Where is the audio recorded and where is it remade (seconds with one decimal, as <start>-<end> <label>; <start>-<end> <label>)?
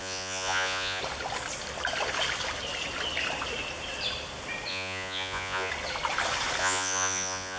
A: 0.0-1.0 remade; 1.0-4.7 recorded; 4.7-5.7 remade; 5.7-6.6 recorded; 6.6-7.6 remade